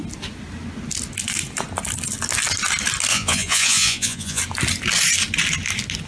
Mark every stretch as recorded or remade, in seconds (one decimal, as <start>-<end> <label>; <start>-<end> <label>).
0.0-3.1 recorded; 3.1-4.4 remade; 4.4-6.1 recorded